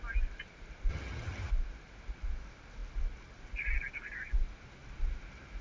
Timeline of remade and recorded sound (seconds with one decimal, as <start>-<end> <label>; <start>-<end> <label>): 0.0-0.9 recorded; 0.9-1.5 remade; 1.5-5.6 recorded